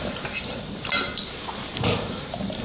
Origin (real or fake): fake